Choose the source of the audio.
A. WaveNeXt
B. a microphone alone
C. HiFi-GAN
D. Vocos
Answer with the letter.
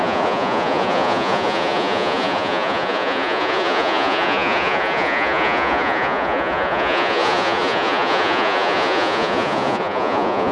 D